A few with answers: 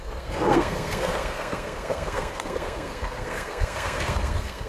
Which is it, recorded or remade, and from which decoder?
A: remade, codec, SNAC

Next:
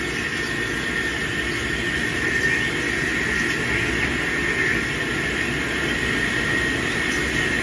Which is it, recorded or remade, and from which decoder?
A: recorded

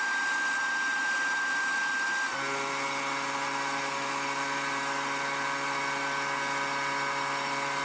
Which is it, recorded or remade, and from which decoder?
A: recorded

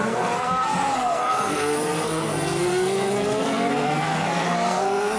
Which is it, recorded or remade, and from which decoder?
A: remade, codec, SNAC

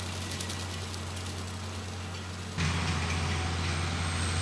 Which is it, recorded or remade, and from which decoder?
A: recorded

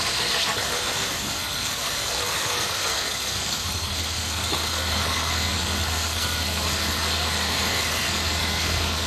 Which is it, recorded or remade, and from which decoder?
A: remade, codec, SNAC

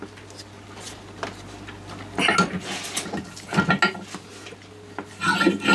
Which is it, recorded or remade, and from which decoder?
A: recorded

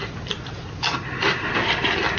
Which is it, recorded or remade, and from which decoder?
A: recorded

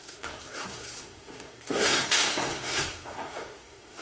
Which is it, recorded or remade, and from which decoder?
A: remade, codec, SNAC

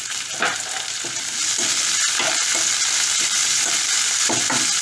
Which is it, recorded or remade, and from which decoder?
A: recorded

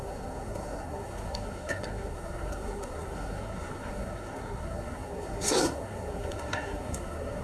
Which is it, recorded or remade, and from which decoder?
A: remade, codec, SNAC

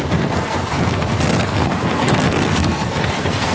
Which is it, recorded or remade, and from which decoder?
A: remade, codec, SNAC